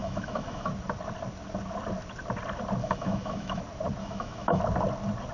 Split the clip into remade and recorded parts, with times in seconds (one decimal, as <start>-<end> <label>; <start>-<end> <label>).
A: 0.0-0.7 remade; 0.7-2.8 recorded; 2.8-3.6 remade; 3.6-4.0 recorded; 4.0-4.6 remade; 4.6-5.3 recorded